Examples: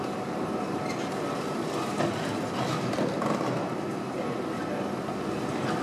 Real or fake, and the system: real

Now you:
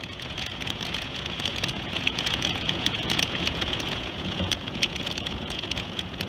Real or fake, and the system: fake, vocoder, Vocos